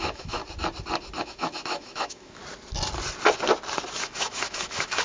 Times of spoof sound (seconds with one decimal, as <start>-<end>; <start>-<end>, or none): 0.0-0.4; 1.2-2.4; 4.0-5.0